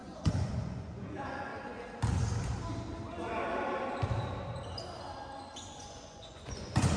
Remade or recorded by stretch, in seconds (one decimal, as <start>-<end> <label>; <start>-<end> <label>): 0.0-1.5 remade; 1.5-5.7 recorded; 5.7-7.0 remade